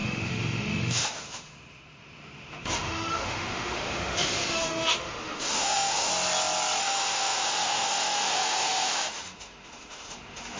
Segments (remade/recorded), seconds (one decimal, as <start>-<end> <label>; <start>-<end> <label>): 0.0-6.1 remade; 6.1-6.8 recorded; 6.8-10.6 remade